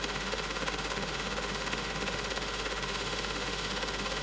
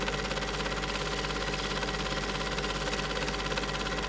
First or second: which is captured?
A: second